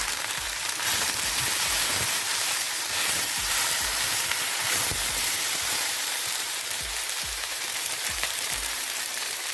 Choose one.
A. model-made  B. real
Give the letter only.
A